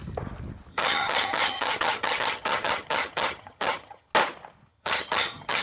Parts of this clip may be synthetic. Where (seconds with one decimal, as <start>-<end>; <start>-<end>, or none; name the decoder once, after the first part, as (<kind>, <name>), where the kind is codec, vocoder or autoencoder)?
0.7-4.1 (vocoder, HiFi-GAN); 4.7-5.6